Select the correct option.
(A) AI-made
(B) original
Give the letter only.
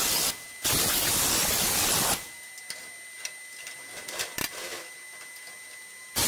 B